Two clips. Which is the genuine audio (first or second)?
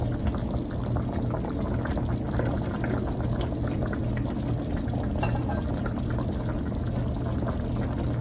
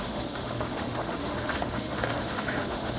first